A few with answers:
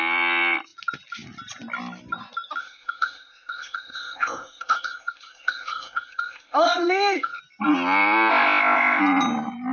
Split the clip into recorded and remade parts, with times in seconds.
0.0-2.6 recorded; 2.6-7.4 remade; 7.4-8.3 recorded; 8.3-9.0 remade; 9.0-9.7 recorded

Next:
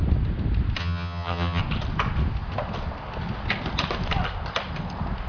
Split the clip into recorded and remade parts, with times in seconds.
0.0-0.8 recorded; 0.8-1.6 remade; 1.6-5.3 recorded